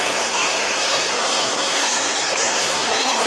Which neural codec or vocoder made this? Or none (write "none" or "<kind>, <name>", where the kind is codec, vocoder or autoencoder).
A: codec, SNAC